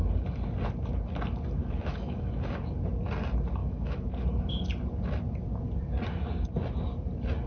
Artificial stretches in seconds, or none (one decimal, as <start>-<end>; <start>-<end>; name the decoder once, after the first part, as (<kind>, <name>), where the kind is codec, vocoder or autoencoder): 1.6-2.3 (autoencoder, DAC-VAE); 3.6-4.1